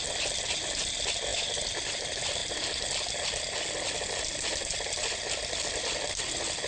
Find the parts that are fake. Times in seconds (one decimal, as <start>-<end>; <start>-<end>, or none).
none